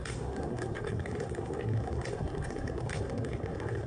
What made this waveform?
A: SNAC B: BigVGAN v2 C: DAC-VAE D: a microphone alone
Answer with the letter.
A